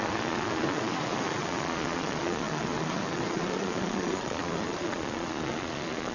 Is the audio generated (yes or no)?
yes